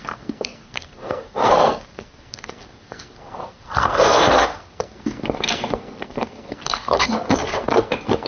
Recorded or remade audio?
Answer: remade